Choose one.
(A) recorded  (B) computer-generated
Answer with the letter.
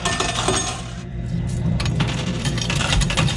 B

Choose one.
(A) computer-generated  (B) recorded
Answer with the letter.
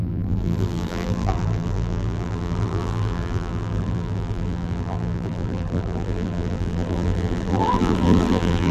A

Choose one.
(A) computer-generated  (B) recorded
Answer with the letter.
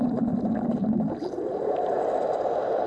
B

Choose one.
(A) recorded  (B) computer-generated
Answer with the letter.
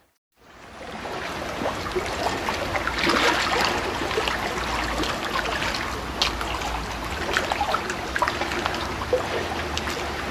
A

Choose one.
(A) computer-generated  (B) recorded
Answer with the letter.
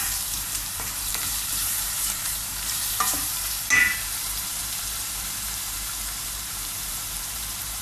A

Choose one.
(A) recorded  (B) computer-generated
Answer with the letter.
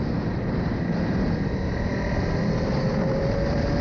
B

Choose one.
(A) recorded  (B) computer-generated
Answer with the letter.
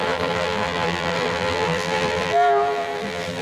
B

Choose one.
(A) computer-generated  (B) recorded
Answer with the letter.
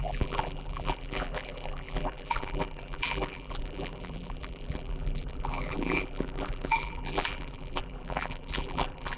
A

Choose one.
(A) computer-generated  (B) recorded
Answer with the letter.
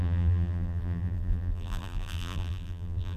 A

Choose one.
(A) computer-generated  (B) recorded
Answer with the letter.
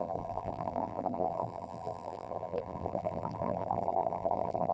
A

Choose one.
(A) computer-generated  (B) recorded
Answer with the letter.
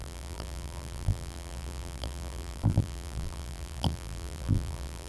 A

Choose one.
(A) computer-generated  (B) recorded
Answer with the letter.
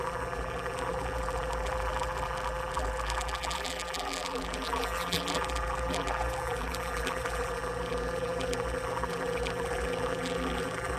A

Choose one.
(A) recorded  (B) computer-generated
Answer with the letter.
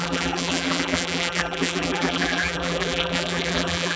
B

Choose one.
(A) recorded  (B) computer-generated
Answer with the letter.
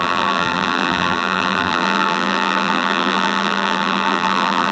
B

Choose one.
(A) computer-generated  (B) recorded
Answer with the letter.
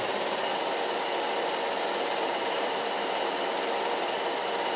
A